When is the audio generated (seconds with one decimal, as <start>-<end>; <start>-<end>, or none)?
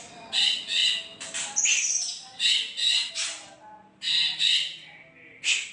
none